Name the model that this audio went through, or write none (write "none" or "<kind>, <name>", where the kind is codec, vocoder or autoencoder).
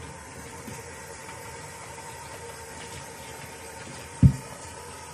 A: vocoder, BigVGAN v2